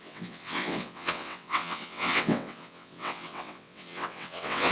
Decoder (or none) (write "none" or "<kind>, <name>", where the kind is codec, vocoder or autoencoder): vocoder, WaveNeXt